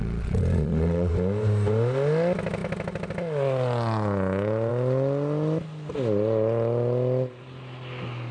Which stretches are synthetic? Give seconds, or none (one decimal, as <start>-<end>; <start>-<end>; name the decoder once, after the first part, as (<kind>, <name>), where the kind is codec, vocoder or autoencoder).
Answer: 0.0-1.1 (vocoder, Vocos)